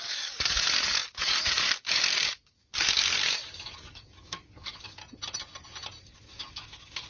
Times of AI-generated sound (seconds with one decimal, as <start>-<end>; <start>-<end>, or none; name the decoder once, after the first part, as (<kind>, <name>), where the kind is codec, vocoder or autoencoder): 0.0-5.0 (codec, DAC); 6.0-7.1